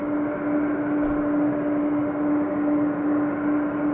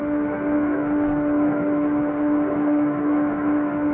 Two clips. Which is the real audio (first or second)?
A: first